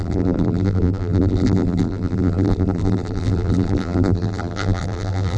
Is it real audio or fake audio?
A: fake